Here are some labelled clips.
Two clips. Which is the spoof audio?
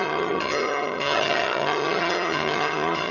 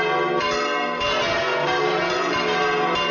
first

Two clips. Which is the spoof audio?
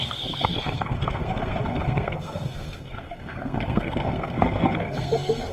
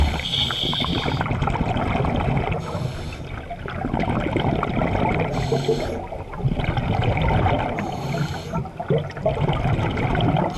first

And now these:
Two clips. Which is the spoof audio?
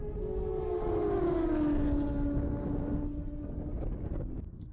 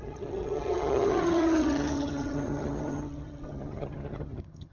second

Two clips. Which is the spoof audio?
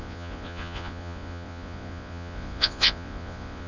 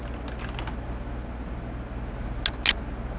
first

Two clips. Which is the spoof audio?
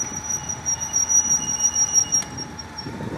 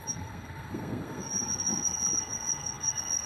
second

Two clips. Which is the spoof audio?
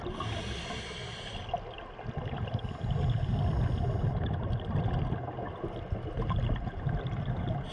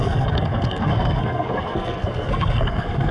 second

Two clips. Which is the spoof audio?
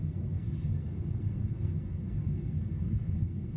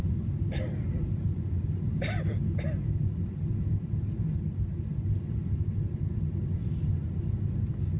first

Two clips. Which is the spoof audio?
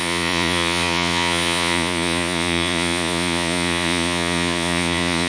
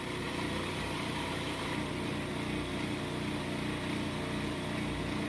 first